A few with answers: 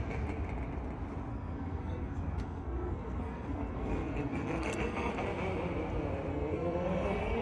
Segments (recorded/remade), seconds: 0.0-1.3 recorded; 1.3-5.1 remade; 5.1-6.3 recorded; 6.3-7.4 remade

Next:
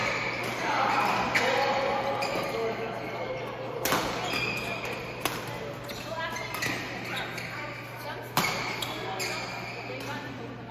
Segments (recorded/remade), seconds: 0.0-10.7 recorded